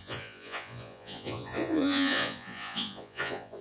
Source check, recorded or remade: remade